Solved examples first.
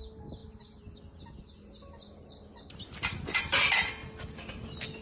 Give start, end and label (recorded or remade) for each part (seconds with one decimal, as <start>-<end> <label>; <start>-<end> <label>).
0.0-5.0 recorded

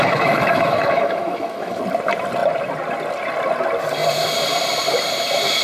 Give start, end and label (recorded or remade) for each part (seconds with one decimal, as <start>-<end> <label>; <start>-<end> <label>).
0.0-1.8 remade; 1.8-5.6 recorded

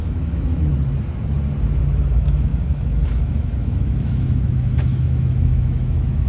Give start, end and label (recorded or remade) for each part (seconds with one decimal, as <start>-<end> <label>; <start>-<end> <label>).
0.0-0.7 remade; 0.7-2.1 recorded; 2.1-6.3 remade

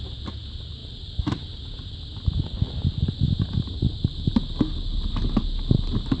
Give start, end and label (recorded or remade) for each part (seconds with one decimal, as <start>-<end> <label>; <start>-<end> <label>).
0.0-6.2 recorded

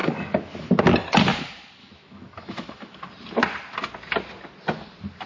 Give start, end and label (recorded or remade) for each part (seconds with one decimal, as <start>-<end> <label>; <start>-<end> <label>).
0.0-0.7 remade; 0.7-1.8 recorded; 1.8-3.1 remade; 3.1-5.3 recorded

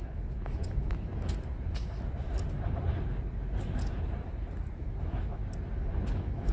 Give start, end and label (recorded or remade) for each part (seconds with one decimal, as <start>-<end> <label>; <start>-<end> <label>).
0.0-1.1 remade; 1.1-5.0 recorded; 5.0-5.4 remade; 5.4-6.1 recorded; 6.1-6.5 remade

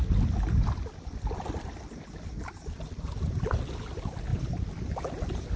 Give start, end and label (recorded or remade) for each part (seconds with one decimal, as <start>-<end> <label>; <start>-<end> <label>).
0.0-5.6 recorded